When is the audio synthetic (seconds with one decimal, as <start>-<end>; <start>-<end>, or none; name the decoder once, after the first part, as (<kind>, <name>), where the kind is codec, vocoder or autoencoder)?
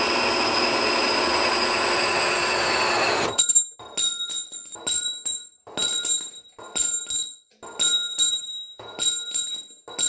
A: none